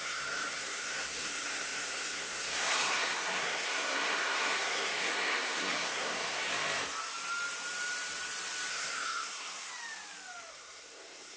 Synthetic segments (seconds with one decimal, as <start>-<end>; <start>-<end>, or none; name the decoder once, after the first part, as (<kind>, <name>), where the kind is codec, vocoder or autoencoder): 0.0-6.5 (codec, SNAC); 8.7-9.7; 10.5-11.4